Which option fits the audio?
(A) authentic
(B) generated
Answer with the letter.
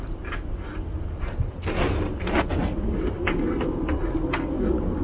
A